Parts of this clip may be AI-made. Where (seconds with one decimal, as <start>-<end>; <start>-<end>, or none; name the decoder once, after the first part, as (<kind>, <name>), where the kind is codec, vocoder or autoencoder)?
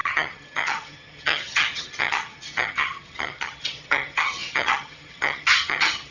0.0-6.1 (vocoder, HiFi-GAN)